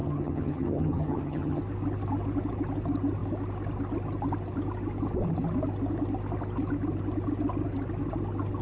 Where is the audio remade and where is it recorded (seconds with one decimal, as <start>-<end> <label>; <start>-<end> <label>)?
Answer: 0.0-1.6 remade; 1.6-8.6 recorded